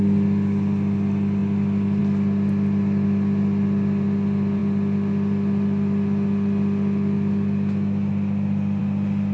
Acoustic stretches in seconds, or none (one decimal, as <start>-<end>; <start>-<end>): 0.0-9.3

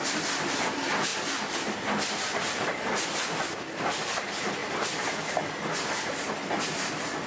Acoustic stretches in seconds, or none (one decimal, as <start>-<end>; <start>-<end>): 0.0-7.3